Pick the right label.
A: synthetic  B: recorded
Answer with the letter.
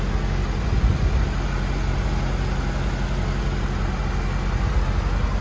B